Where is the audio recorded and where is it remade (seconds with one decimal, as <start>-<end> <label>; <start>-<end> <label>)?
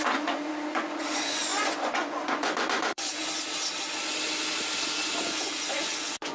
0.0-3.2 remade; 3.2-5.2 recorded; 5.2-6.3 remade